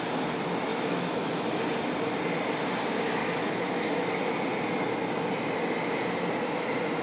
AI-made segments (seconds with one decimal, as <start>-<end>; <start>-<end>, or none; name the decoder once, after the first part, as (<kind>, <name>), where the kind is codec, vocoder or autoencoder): 0.7-1.3 (autoencoder, DAC-VAE); 3.2-3.8

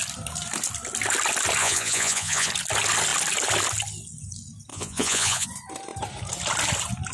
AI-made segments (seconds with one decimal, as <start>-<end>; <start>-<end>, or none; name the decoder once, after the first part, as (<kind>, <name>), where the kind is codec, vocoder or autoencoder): 1.6-2.5 (vocoder, Vocos); 4.7-5.5